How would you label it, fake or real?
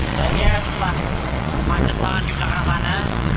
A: fake